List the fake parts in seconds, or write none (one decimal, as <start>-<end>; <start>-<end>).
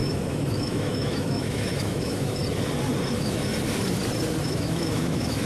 0.0-2.4; 3.1-3.5; 4.4-5.5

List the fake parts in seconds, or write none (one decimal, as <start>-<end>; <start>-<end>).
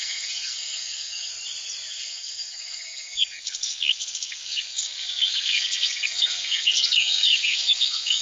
0.0-1.3; 1.9-8.2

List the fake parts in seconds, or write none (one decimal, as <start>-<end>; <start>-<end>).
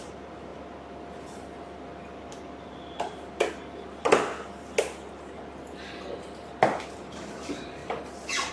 0.0-0.5; 2.3-4.3; 6.8-7.8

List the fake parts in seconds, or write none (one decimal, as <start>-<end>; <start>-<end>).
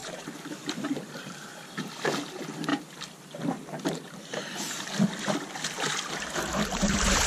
0.0-7.3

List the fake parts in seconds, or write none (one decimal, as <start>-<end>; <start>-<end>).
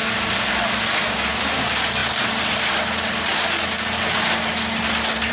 none